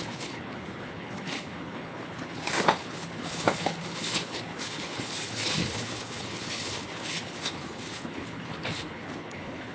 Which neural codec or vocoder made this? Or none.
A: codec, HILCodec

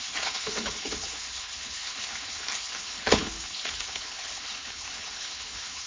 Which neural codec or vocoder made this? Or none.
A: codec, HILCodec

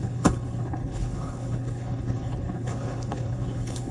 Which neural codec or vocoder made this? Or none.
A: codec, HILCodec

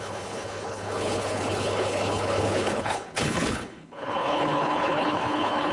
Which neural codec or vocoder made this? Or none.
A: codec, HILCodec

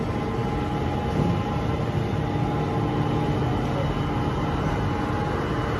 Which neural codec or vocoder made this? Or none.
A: none